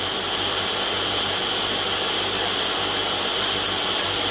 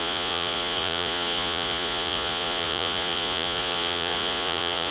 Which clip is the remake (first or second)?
second